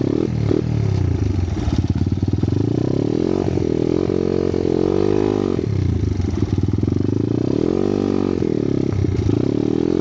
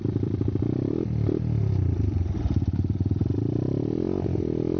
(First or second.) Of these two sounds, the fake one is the second